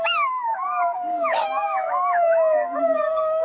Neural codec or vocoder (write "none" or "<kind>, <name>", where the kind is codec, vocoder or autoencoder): codec, DAC